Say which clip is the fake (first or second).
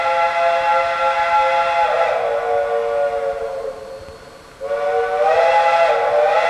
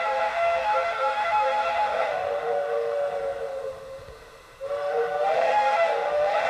second